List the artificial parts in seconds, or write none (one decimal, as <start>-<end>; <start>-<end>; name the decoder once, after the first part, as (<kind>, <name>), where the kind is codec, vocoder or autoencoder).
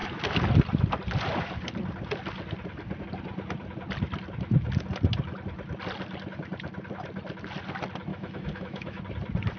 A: 8.1-9.0 (autoencoder, DAC-VAE)